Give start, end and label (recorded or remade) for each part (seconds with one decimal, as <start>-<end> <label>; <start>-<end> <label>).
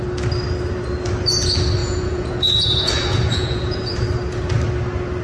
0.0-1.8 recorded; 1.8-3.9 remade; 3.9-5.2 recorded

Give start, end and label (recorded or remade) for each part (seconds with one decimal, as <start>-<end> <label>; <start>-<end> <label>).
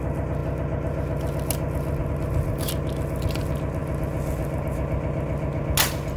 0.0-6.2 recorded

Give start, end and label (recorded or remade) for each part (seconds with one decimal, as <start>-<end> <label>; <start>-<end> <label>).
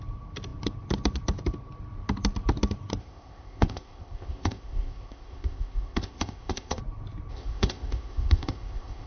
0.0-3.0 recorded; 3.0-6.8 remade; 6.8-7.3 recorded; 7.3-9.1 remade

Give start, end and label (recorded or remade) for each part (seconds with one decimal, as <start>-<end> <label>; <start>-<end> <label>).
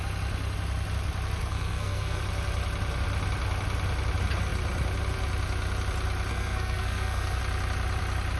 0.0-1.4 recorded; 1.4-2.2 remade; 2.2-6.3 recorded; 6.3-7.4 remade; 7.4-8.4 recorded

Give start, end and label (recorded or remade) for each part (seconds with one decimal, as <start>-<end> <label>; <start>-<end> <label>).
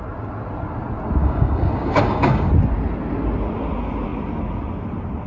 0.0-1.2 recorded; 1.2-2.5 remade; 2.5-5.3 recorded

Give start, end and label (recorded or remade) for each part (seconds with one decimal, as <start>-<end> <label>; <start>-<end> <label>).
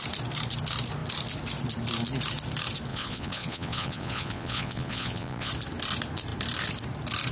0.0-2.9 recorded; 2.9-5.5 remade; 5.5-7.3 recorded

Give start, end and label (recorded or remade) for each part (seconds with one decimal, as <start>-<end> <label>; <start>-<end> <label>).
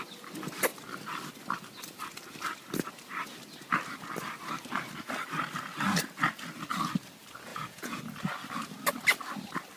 0.0-7.5 recorded; 7.5-8.0 remade; 8.0-9.8 recorded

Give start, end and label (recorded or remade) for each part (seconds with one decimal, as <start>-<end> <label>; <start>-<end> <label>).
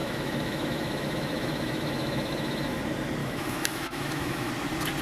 0.0-2.8 remade; 2.8-3.2 recorded; 3.2-4.5 remade; 4.5-5.0 recorded